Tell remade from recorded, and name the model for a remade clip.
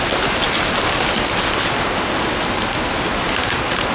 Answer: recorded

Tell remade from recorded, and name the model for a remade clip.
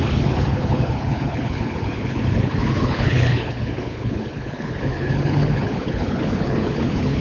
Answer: remade, codec, HILCodec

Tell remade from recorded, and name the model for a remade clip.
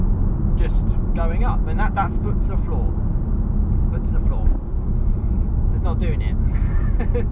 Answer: recorded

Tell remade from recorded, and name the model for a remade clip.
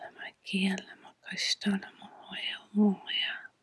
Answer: recorded